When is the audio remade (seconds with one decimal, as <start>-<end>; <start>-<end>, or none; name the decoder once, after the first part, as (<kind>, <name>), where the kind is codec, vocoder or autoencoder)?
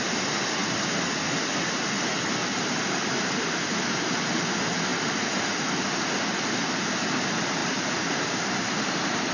2.4-3.4 (vocoder, BigVGAN v2); 7.6-8.9